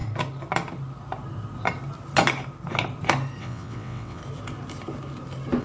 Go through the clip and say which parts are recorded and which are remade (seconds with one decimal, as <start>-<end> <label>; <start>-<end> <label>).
0.0-3.4 recorded; 3.4-4.2 remade; 4.2-5.6 recorded